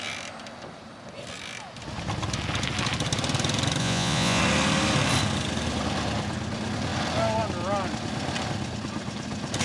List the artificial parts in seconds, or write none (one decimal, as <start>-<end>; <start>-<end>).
3.8-4.4